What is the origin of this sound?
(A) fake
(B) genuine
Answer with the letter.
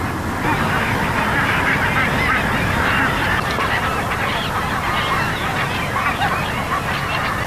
B